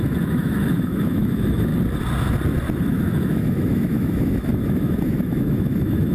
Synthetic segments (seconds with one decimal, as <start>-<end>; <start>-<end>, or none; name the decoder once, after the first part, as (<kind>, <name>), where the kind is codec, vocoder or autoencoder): 0.0-1.7 (autoencoder, DAC-VAE); 2.9-6.1